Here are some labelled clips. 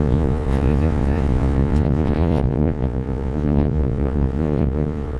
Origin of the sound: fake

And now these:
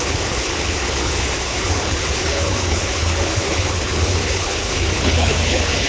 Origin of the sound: fake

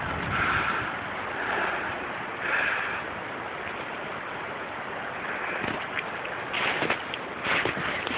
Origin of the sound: real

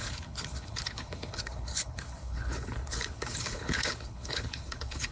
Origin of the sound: fake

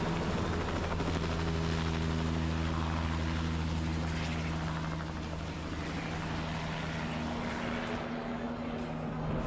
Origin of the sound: real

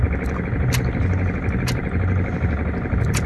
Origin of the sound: real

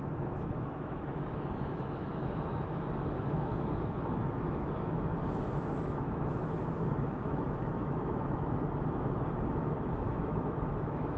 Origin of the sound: fake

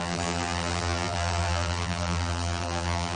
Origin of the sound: fake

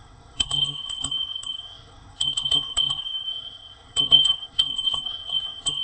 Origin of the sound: fake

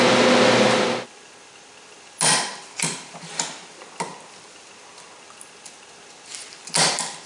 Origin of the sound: real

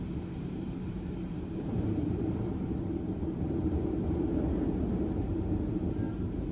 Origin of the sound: fake